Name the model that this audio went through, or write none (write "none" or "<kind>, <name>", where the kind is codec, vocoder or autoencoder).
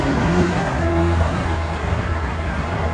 codec, SNAC